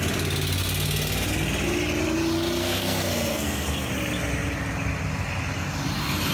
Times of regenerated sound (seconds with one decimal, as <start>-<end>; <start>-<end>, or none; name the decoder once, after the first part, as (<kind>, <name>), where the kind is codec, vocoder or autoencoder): 2.6-3.9 (codec, SNAC)